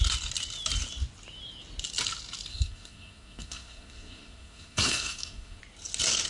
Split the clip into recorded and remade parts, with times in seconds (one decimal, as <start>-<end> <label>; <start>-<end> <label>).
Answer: 0.0-2.5 recorded; 2.5-5.6 remade; 5.6-6.3 recorded